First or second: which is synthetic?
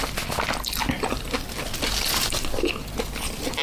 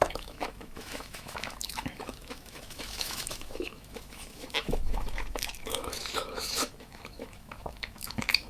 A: second